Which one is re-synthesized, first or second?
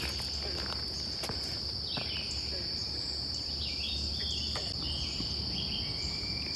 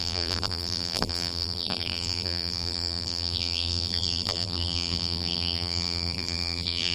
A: second